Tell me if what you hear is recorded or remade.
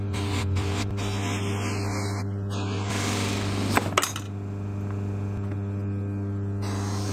recorded